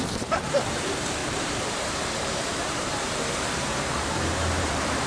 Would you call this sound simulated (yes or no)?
yes